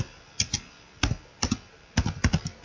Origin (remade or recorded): recorded